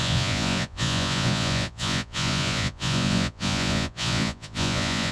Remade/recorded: remade